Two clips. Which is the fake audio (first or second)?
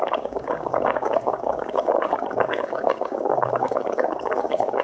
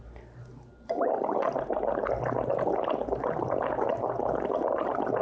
first